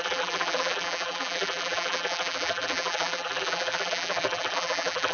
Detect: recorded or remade remade